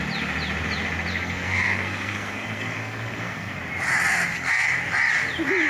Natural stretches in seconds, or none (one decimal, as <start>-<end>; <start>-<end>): 0.0-1.1; 3.6-4.3; 4.8-5.7